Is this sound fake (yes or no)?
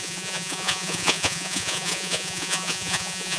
yes